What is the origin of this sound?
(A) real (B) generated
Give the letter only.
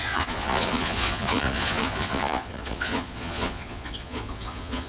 B